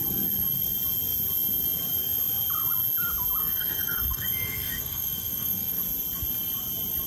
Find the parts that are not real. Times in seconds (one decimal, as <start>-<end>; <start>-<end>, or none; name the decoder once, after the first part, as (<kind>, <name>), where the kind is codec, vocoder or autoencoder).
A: 3.4-5.8 (codec, SNAC)